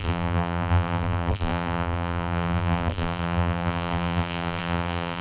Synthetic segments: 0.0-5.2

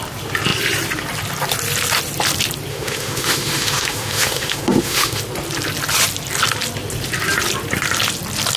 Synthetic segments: 2.7-5.2

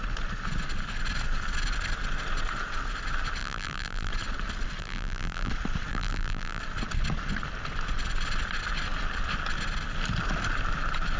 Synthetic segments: 3.4-4.1; 4.8-5.5; 5.9-6.6

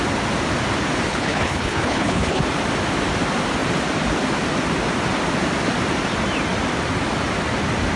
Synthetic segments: 1.1-2.4